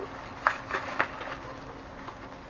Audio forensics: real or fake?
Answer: real